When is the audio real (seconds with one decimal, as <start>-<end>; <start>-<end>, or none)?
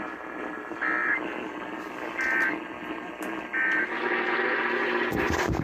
0.0-5.6